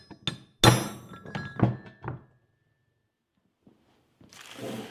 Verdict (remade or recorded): recorded